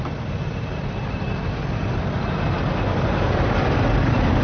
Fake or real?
fake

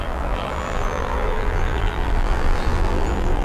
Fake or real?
fake